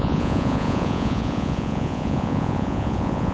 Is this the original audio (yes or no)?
no